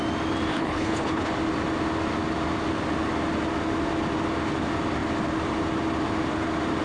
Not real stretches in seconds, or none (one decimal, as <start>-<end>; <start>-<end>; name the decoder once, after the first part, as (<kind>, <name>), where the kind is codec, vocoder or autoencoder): 0.5-1.3 (codec, HILCodec)